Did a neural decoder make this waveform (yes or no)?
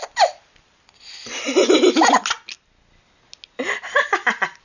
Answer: no